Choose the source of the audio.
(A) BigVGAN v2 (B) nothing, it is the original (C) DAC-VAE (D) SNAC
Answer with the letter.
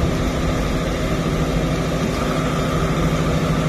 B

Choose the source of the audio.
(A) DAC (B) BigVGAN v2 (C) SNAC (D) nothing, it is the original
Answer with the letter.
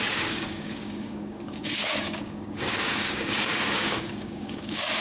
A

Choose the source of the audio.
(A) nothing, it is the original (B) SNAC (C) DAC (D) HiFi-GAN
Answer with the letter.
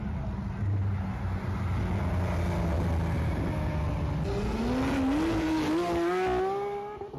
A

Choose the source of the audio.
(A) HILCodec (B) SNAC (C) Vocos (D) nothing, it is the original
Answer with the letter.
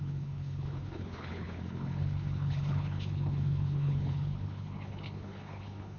A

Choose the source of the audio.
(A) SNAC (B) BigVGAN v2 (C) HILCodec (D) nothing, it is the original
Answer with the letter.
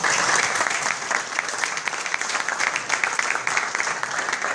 B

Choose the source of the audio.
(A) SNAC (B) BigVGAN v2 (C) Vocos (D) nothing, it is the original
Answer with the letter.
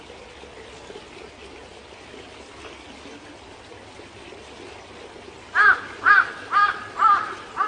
D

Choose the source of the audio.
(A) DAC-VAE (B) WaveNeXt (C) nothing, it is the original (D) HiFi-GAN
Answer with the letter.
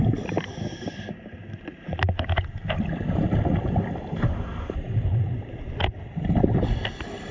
C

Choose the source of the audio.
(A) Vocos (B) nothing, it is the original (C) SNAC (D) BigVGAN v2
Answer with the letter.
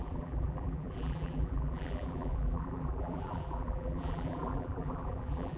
D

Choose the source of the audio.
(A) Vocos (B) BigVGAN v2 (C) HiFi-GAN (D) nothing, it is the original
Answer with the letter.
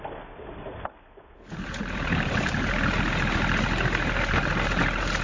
D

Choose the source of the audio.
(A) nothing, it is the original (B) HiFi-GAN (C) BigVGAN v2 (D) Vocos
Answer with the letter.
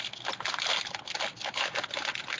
A